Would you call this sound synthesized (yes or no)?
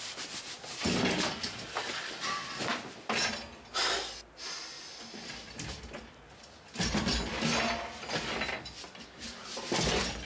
no